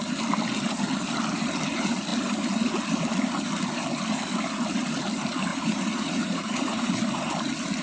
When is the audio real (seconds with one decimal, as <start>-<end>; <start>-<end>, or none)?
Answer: 0.0-5.5; 7.0-7.8